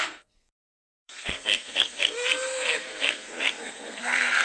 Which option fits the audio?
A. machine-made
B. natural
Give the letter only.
A